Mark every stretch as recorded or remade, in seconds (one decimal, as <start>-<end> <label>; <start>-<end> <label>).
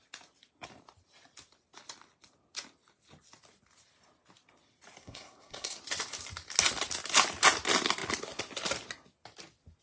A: 0.0-5.0 recorded; 5.0-5.8 remade; 5.8-9.8 recorded